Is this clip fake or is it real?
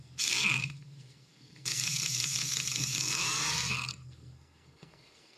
fake